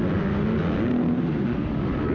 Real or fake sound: real